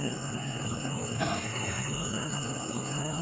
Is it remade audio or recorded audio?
remade